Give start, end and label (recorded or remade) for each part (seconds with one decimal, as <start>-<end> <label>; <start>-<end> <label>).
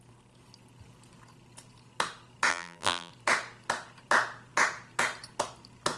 0.0-2.5 recorded; 2.5-3.1 remade; 3.1-6.0 recorded